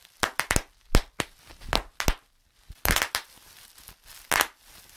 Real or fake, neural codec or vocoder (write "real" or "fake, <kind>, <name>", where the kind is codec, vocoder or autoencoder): real